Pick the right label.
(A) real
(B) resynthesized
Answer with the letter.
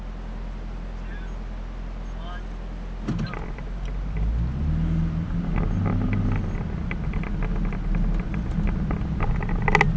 A